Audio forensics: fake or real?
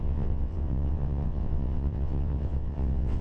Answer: fake